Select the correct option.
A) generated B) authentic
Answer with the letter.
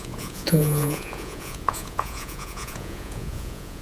A